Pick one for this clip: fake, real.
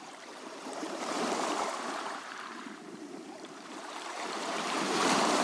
fake